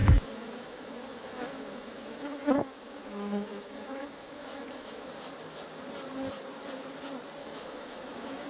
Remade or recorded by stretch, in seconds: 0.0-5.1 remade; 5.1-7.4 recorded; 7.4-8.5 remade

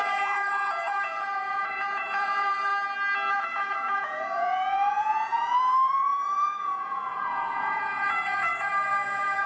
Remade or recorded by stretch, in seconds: 0.0-2.7 remade; 2.7-3.3 recorded; 3.3-9.5 remade

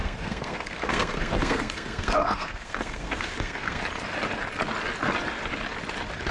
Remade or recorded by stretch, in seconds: 0.0-3.8 remade; 3.8-6.3 recorded

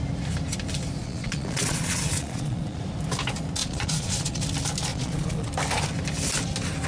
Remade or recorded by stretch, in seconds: 0.0-1.0 recorded; 1.0-2.8 remade; 2.8-3.6 recorded; 3.6-4.4 remade; 4.4-4.9 recorded; 4.9-5.5 remade; 5.5-6.9 recorded

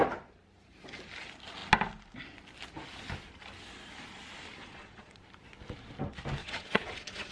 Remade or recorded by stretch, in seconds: 0.0-4.6 recorded; 4.6-5.2 remade; 5.2-6.4 recorded; 6.4-7.3 remade